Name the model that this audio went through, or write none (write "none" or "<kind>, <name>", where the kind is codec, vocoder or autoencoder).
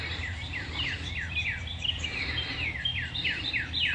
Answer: vocoder, BigVGAN v2